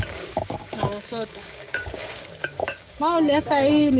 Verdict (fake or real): fake